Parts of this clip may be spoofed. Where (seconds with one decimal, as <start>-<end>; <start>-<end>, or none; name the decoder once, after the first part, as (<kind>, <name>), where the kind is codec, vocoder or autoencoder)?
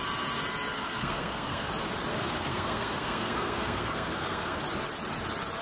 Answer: 0.7-1.7 (codec, SNAC); 2.1-4.6